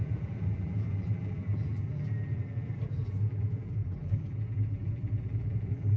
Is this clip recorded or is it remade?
remade